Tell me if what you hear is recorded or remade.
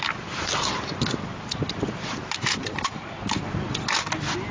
recorded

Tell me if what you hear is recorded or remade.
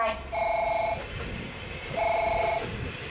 recorded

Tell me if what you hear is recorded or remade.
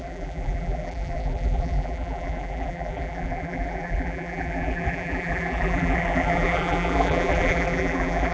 remade